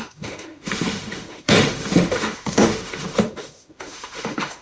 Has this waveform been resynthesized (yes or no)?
yes